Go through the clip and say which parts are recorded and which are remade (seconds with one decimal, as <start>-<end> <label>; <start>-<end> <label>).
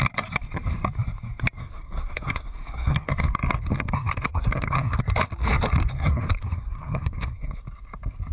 0.0-1.6 recorded; 1.6-3.1 remade; 3.1-3.7 recorded; 3.7-5.0 remade; 5.0-5.9 recorded; 5.9-7.6 remade; 7.6-8.3 recorded